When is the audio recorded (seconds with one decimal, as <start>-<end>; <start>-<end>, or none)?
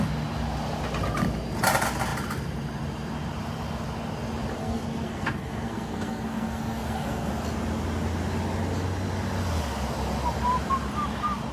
0.0-4.6; 7.3-11.5